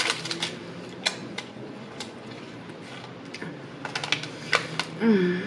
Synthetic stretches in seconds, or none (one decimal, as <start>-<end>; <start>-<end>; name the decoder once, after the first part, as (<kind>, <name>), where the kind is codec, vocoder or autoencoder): 1.2-2.6 (vocoder, Vocos)